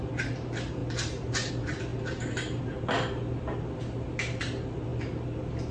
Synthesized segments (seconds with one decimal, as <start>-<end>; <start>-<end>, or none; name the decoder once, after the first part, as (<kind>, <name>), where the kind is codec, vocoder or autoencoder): none